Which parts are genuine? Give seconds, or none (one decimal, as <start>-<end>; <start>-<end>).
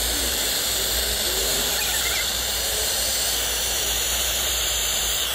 3.1-3.6